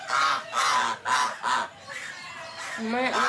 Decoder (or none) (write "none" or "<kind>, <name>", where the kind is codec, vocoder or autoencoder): none